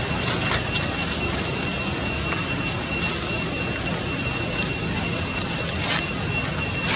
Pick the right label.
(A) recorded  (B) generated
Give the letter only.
A